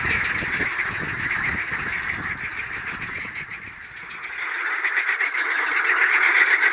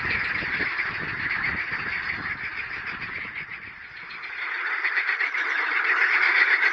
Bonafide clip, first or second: first